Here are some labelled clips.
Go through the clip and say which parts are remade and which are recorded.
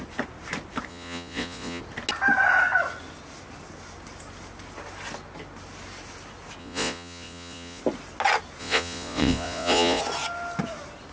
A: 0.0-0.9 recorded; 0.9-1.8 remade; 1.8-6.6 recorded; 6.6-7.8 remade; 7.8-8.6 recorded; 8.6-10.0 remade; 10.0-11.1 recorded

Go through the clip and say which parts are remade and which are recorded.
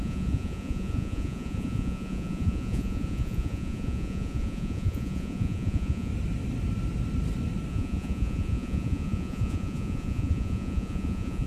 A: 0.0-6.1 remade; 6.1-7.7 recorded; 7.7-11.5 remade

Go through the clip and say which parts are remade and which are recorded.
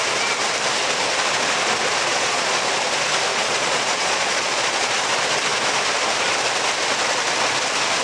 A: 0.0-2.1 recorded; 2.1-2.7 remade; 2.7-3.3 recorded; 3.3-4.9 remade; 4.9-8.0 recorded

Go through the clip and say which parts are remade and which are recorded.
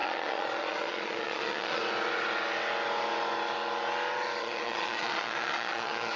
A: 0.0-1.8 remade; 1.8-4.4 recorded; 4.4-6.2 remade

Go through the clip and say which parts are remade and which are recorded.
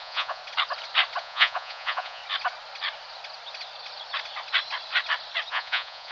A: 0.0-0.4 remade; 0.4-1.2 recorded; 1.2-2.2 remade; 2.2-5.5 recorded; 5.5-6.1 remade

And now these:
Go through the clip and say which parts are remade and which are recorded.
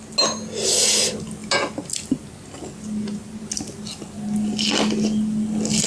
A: 0.0-5.9 recorded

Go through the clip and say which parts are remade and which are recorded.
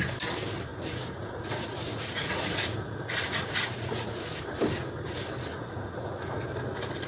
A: 0.0-0.7 recorded; 0.7-4.4 remade; 4.4-5.5 recorded; 5.5-6.3 remade; 6.3-7.1 recorded